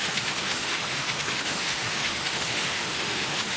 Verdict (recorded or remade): remade